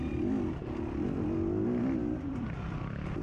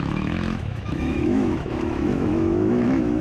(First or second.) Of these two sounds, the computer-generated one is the second